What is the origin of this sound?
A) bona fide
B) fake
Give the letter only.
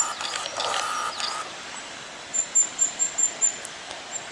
A